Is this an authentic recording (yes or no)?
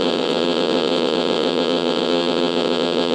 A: no